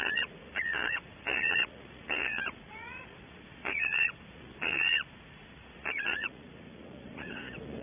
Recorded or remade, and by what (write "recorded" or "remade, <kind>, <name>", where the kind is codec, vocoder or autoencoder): remade, vocoder, Vocos